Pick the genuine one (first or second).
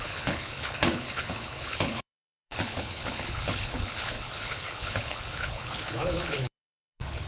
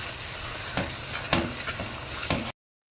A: second